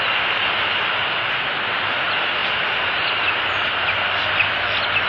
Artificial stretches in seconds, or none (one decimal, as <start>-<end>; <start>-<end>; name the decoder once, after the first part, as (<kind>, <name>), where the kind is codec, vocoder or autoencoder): none